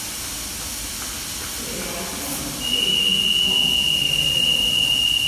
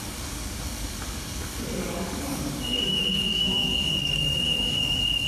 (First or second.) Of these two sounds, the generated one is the second